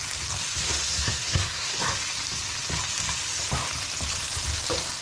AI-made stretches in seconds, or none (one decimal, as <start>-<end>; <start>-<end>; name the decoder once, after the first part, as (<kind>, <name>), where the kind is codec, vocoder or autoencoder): 0.6-1.8 (codec, SNAC)